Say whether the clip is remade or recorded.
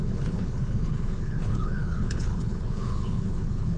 remade